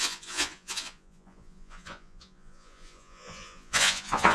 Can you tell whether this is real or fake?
fake